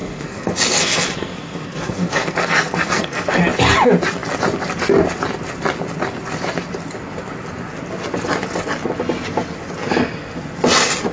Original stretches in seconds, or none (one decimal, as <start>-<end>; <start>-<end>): 3.4-11.1